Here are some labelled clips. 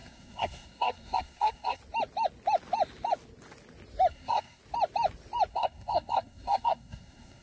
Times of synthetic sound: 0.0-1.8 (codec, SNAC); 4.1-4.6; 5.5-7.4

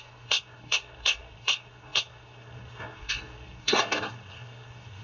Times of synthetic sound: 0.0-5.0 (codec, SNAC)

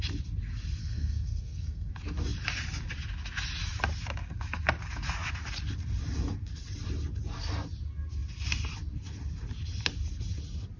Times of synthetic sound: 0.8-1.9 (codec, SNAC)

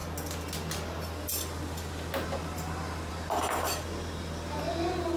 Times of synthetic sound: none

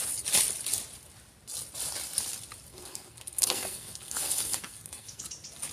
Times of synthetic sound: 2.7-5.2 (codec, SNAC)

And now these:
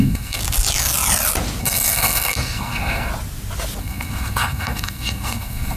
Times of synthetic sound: 0.0-0.4 (codec, SNAC); 1.6-3.1; 3.8-5.8

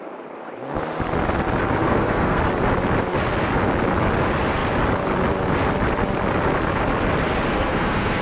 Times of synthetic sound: 1.8-2.4 (codec, SNAC); 7.5-8.2

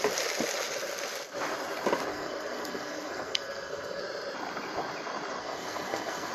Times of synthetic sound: 2.1-4.0 (codec, SNAC); 5.4-6.3